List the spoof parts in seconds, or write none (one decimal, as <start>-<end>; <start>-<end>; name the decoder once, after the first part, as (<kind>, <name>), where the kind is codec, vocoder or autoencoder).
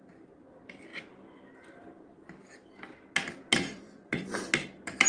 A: 3.7-4.2 (vocoder, Vocos)